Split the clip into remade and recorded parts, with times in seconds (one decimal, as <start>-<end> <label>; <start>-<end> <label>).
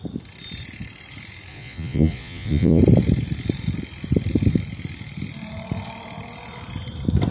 0.0-1.5 recorded; 1.5-2.8 remade; 2.8-7.3 recorded